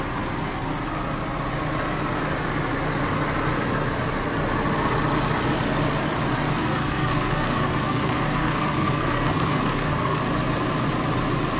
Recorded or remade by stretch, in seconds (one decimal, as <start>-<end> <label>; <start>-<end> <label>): 0.0-6.6 recorded; 6.6-10.2 remade; 10.2-11.6 recorded